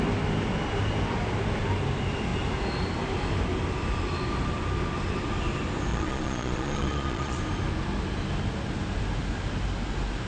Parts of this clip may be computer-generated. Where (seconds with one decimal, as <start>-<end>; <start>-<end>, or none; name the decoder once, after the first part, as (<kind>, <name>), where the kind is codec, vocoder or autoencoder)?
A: 5.9-7.4 (vocoder, Vocos)